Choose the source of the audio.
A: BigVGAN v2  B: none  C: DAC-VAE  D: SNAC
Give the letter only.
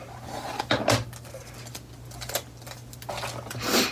B